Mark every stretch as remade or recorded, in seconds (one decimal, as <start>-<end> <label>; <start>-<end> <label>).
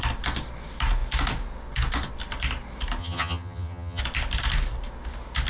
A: 0.0-3.0 recorded; 3.0-4.0 remade; 4.0-5.5 recorded